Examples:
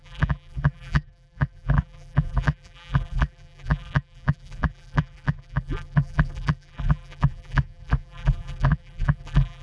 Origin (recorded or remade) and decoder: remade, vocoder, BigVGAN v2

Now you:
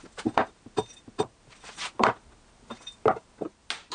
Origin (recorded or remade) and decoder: recorded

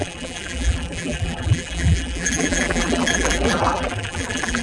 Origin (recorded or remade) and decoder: remade, vocoder, BigVGAN v2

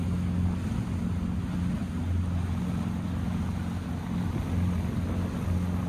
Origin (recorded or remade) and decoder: recorded